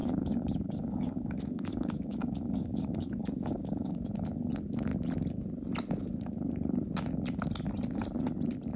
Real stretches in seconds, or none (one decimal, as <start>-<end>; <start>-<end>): 4.1-8.8